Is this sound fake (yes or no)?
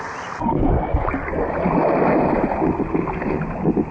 no